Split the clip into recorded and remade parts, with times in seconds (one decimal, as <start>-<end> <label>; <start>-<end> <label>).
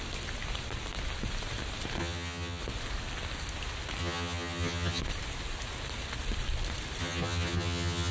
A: 0.0-2.0 recorded; 2.0-2.6 remade; 2.6-4.0 recorded; 4.0-5.0 remade; 5.0-7.0 recorded; 7.0-8.1 remade